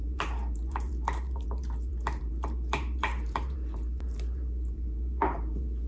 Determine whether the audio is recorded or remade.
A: remade